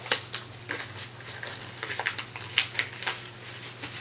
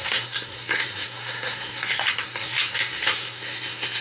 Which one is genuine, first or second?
first